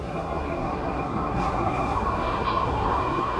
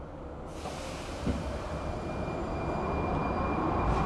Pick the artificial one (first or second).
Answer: first